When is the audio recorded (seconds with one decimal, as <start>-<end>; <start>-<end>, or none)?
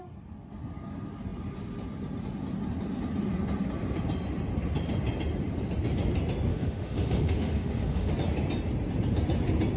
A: 0.0-6.5; 8.1-9.8